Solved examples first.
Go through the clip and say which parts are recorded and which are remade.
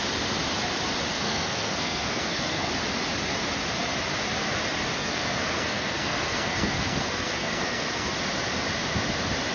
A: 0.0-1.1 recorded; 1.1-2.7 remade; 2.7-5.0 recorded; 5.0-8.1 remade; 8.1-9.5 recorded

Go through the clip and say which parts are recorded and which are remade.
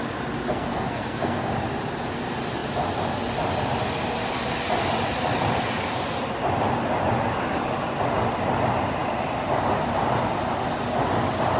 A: 0.0-0.5 recorded; 0.5-1.5 remade; 1.5-11.6 recorded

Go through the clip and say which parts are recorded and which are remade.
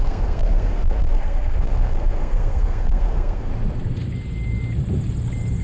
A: 0.0-3.5 remade; 3.5-5.6 recorded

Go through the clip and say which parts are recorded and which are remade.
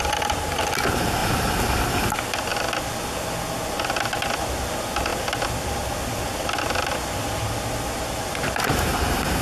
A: 0.0-9.4 recorded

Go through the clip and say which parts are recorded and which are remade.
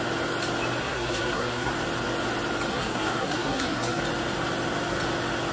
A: 0.0-0.8 recorded; 0.8-1.7 remade; 1.7-2.7 recorded; 2.7-4.0 remade; 4.0-5.5 recorded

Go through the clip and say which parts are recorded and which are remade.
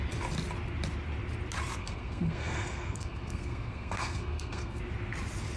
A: 0.0-1.8 recorded; 1.8-4.8 remade; 4.8-5.6 recorded